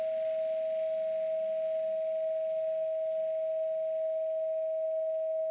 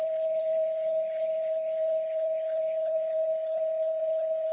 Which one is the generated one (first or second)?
second